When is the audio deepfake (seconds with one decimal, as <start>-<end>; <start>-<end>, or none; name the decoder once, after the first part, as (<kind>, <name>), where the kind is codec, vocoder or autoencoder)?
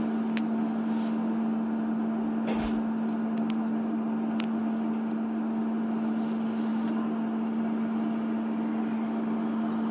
none